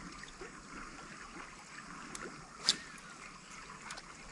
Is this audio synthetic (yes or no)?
no